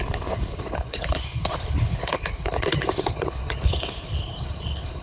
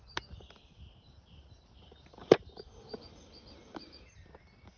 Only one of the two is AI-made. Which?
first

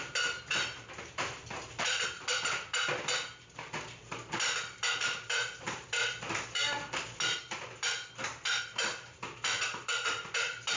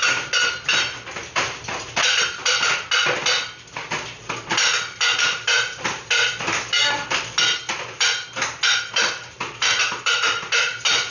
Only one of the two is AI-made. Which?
first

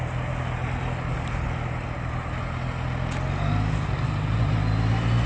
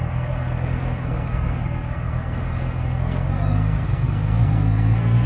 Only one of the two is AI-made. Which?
second